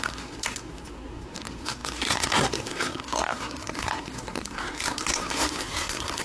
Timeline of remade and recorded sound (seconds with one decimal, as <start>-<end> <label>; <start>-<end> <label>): 0.0-6.2 remade